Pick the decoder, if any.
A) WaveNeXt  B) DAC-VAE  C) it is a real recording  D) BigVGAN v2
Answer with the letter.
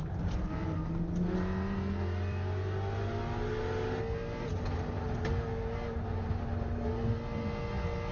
C